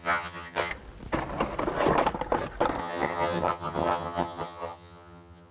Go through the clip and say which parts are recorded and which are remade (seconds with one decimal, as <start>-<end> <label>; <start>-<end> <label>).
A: 0.0-0.7 remade; 0.7-2.8 recorded; 2.8-5.5 remade